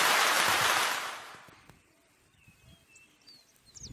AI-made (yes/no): no